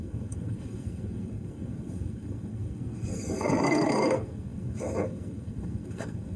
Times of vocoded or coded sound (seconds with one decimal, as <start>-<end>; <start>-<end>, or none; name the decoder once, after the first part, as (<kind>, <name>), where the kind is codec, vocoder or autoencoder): 0.0-6.4 (codec, SNAC)